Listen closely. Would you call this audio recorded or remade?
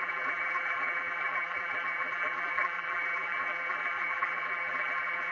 remade